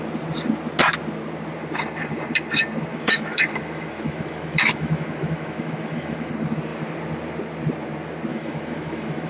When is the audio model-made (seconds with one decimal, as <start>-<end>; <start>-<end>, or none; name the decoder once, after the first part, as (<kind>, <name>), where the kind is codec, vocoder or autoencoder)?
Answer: 2.9-6.3 (autoencoder, DAC-VAE); 8.3-9.3